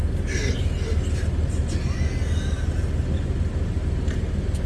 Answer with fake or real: real